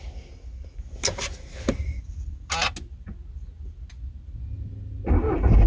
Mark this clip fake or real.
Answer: real